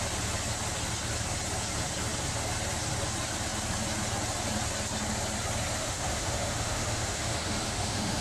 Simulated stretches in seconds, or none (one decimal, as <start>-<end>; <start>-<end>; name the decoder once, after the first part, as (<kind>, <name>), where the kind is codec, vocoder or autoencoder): 5.8-8.2 (autoencoder, DAC-VAE)